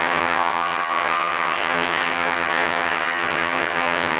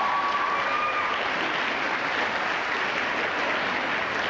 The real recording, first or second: second